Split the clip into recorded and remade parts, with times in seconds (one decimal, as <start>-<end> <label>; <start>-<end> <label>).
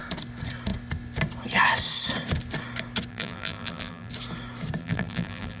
0.0-3.1 recorded; 3.1-4.1 remade; 4.1-4.8 recorded; 4.8-5.6 remade